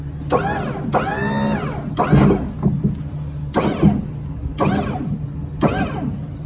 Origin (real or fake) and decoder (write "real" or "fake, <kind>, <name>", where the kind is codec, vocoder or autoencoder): real